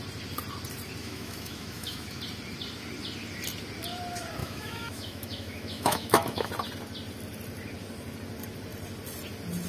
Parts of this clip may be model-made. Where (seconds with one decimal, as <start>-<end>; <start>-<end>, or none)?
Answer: 1.0-2.2; 4.4-6.5